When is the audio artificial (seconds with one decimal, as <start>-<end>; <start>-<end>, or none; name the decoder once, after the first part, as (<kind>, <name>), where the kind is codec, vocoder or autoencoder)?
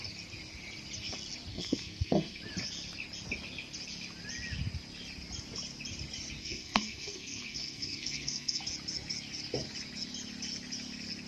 1.5-2.4 (codec, SNAC); 6.4-8.6